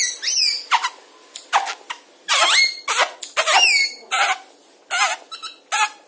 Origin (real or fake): real